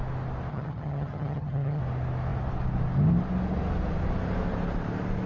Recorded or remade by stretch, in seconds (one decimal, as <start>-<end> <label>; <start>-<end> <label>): 0.0-0.5 recorded; 0.5-1.8 remade; 1.8-5.3 recorded